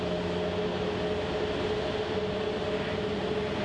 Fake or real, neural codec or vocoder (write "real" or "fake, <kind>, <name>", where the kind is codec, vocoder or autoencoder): real